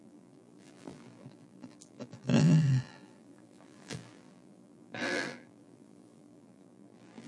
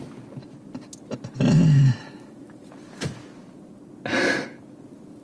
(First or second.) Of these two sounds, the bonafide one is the second